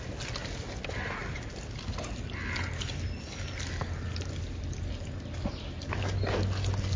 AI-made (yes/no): no